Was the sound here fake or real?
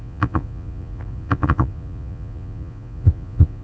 fake